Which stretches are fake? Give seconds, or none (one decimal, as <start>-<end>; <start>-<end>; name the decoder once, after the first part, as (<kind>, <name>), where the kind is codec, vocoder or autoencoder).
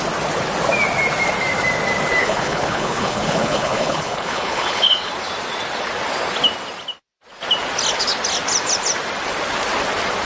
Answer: 2.2-5.1 (codec, HILCodec)